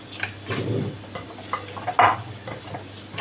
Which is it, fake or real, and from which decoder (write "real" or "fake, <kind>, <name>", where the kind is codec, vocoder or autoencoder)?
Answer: real